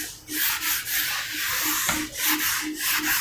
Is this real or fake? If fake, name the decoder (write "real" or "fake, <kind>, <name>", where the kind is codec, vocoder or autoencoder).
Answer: real